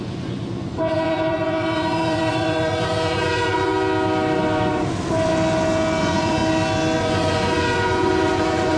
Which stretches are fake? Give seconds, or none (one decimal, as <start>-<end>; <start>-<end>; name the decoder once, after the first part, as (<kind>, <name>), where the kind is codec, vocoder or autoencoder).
0.0-3.7 (vocoder, Vocos); 6.0-6.4; 7.0-8.8